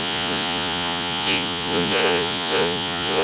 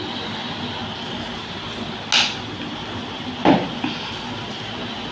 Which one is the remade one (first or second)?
first